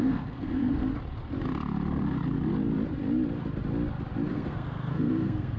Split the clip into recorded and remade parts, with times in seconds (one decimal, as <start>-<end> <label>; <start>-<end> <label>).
0.0-0.9 remade; 0.9-4.3 recorded; 4.3-5.6 remade